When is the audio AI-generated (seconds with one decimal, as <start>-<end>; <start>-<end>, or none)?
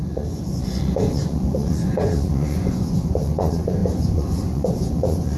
0.0-5.4